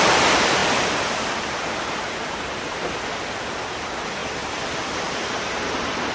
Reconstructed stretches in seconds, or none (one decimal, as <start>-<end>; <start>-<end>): none